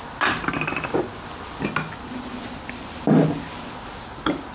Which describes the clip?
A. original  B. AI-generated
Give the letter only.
A